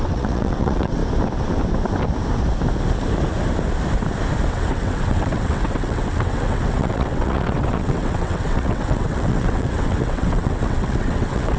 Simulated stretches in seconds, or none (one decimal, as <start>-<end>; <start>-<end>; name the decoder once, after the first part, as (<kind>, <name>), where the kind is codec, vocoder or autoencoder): 0.0-1.0 (vocoder, WaveNeXt); 4.5-11.6